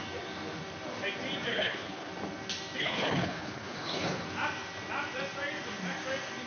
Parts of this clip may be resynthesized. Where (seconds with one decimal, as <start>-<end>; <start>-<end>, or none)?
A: 1.5-2.1; 2.8-4.2